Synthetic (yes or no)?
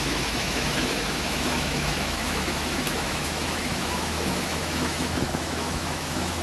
yes